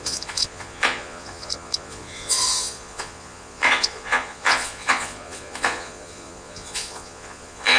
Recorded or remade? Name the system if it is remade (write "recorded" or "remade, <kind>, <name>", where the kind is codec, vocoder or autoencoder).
remade, vocoder, Vocos